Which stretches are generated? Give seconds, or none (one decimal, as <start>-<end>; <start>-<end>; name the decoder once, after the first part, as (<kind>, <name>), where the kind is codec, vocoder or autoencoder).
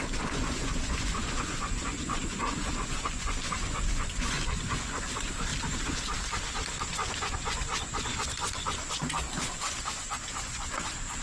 0.0-5.5 (vocoder, Vocos); 6.9-11.2